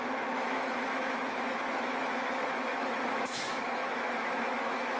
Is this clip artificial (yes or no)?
yes